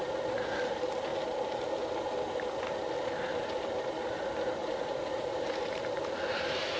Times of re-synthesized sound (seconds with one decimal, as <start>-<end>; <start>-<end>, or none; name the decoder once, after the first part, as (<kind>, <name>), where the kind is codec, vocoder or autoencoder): 4.6-5.3 (vocoder, Vocos)